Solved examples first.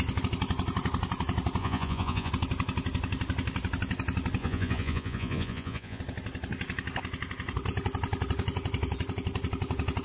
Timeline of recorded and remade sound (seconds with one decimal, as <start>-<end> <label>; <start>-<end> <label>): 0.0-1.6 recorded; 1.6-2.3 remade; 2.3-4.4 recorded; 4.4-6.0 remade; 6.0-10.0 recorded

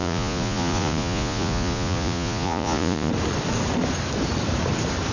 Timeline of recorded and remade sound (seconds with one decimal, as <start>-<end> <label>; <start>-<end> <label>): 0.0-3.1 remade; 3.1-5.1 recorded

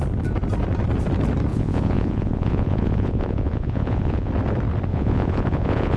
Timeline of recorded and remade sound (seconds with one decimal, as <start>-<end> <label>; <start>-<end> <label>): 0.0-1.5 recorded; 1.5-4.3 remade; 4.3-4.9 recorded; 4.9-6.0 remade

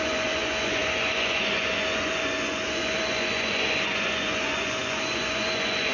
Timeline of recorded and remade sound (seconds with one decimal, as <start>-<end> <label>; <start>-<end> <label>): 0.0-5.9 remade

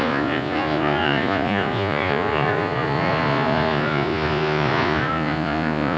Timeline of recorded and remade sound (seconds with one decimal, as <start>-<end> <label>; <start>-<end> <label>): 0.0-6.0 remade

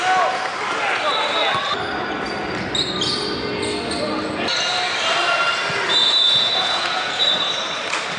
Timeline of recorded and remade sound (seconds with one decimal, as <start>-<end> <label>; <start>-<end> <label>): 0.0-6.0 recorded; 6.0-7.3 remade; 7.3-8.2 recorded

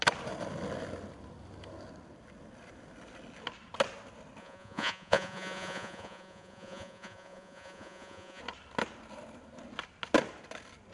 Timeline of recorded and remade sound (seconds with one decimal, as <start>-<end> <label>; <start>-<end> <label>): 0.0-4.4 recorded; 4.4-8.4 remade; 8.4-10.9 recorded

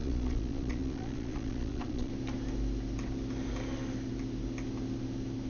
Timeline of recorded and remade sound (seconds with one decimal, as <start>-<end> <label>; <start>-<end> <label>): 0.0-2.1 remade; 2.1-5.5 recorded